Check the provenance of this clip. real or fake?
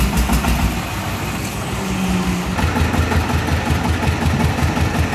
real